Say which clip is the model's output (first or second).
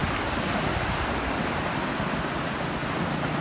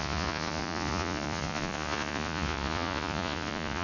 second